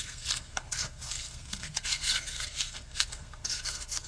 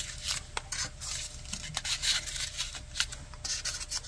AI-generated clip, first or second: first